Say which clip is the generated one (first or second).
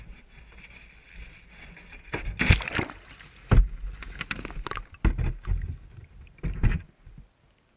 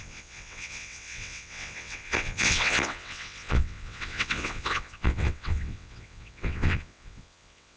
second